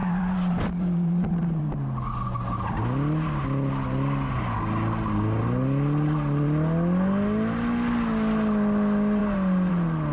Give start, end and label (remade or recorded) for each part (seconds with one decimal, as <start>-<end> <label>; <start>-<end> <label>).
0.0-1.6 remade; 1.6-10.1 recorded